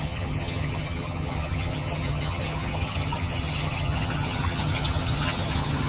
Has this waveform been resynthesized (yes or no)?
yes